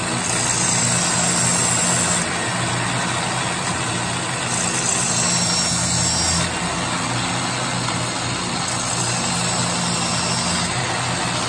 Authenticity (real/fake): real